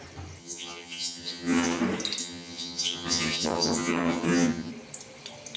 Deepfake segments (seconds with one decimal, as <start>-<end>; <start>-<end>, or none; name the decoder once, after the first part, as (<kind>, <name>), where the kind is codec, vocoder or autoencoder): 0.4-1.8 (vocoder, HiFi-GAN); 2.2-4.7